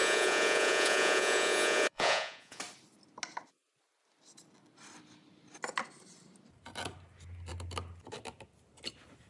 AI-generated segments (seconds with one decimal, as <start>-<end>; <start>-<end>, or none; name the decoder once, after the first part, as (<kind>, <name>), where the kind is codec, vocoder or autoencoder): 0.0-2.6 (vocoder, Vocos)